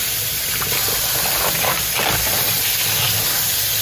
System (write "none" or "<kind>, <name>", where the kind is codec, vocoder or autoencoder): none